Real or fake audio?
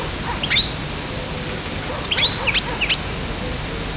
real